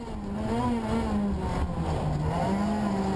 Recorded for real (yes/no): yes